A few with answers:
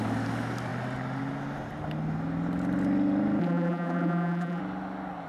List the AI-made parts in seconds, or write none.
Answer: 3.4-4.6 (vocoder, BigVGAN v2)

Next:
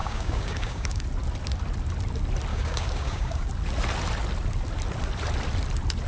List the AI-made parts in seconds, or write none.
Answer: 0.0-1.0 (codec, DAC); 2.5-3.5

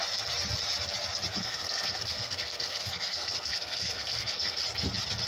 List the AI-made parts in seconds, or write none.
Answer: 1.4-4.6 (codec, SNAC)

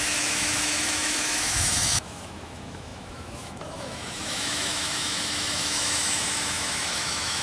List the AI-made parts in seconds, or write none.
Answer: 0.0-7.4 (autoencoder, DAC-VAE)